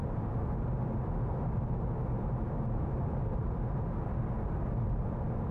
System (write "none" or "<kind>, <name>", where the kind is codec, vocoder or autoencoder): none